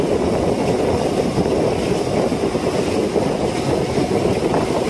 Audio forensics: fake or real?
real